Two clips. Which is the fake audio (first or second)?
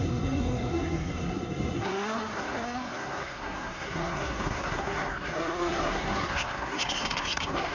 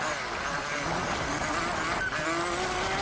first